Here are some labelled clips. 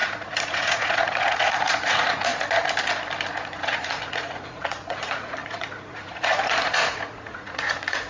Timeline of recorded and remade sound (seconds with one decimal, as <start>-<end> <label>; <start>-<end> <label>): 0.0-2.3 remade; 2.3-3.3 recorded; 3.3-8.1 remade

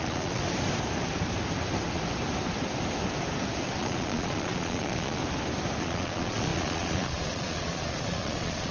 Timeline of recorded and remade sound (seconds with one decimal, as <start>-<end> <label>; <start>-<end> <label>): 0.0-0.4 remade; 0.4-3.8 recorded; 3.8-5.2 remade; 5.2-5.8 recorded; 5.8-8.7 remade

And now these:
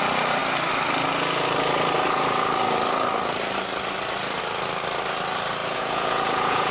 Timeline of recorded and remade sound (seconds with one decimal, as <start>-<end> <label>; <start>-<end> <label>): 0.0-5.6 recorded; 5.6-6.7 remade

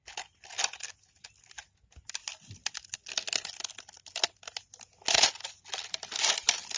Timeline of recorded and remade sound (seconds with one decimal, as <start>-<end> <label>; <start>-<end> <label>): 0.0-6.8 recorded

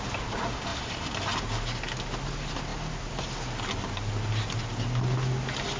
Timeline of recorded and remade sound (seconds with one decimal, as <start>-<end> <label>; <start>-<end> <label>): 0.0-5.8 recorded

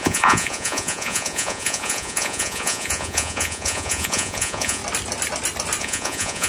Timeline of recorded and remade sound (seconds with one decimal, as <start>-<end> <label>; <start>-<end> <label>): 0.0-4.8 remade; 4.8-5.8 recorded; 5.8-6.5 remade

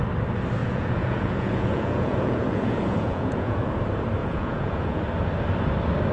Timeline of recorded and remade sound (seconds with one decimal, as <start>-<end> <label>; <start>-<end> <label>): 0.0-0.6 recorded; 0.6-3.8 remade; 3.8-4.2 recorded; 4.2-5.0 remade; 5.0-6.1 recorded

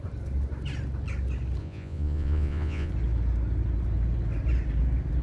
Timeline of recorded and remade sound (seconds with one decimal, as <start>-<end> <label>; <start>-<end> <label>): 0.0-1.6 recorded; 1.6-2.9 remade; 2.9-5.2 recorded